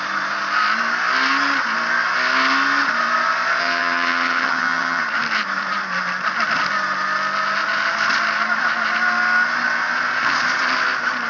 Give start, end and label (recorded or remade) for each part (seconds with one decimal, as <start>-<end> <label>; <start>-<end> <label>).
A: 0.0-3.6 recorded; 3.6-5.0 remade; 5.0-11.3 recorded